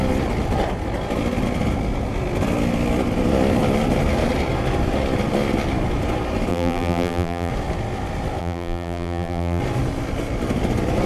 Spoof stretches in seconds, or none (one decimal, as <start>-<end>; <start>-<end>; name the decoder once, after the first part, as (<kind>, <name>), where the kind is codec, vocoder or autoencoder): 6.5-7.5 (vocoder, BigVGAN v2); 8.4-9.6